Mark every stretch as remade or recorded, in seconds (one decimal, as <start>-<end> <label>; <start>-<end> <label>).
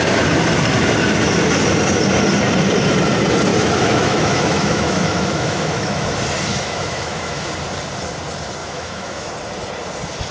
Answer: 0.0-3.5 recorded; 3.5-6.0 remade; 6.0-6.5 recorded; 6.5-7.5 remade; 7.5-8.6 recorded; 8.6-9.3 remade; 9.3-10.3 recorded